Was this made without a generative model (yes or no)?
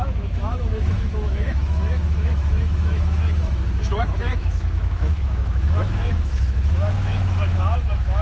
no